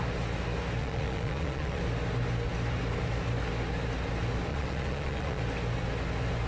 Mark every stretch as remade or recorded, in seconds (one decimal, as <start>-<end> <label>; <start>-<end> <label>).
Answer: 0.0-0.8 recorded; 0.8-1.8 remade; 1.8-4.5 recorded; 4.5-5.4 remade; 5.4-6.5 recorded